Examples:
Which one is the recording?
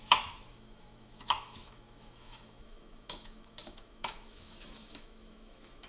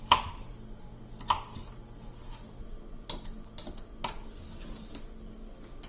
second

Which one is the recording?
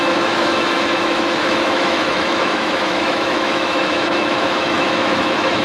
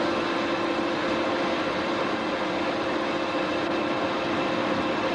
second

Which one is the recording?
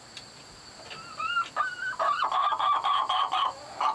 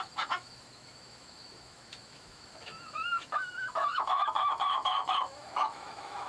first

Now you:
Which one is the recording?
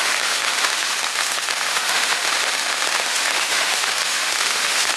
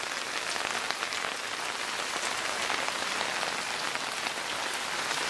second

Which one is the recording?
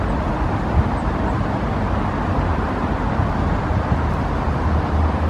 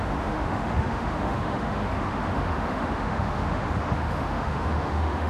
first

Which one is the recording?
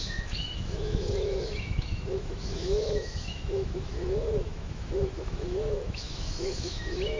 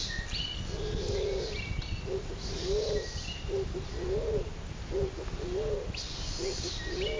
second